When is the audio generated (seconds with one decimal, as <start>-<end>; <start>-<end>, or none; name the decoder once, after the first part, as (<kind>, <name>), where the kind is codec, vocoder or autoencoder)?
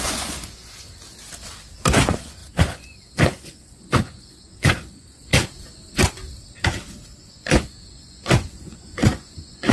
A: 0.0-0.9 (vocoder, Vocos); 2.0-5.3; 7.2-9.7